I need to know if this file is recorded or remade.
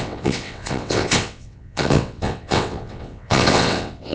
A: remade